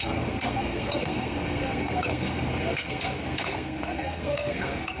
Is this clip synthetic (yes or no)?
yes